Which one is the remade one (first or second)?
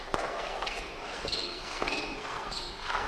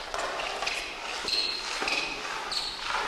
first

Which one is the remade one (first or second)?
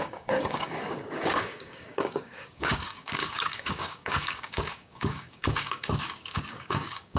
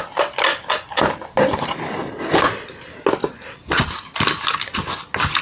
first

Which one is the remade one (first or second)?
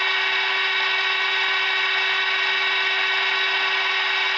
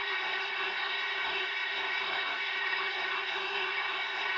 second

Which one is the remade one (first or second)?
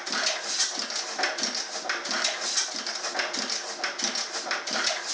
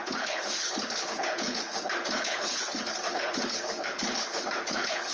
second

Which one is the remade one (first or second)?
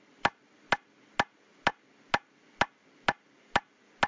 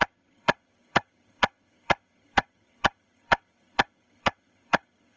second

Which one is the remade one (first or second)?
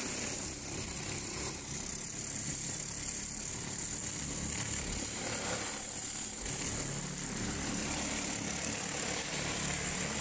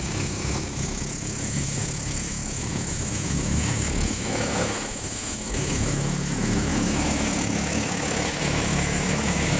second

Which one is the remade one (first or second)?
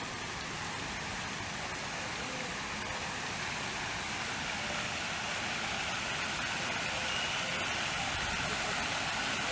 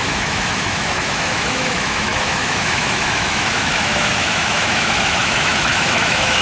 second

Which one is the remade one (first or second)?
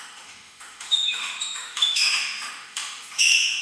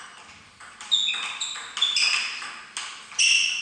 first